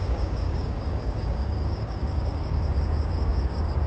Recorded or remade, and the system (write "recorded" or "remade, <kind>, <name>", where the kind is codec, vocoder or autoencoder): remade, codec, DAC